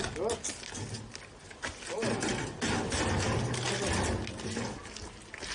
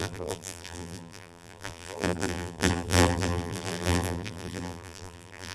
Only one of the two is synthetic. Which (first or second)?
second